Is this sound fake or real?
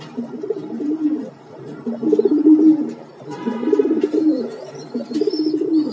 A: fake